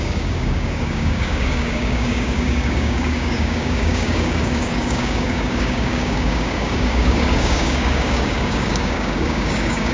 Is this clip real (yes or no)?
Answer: no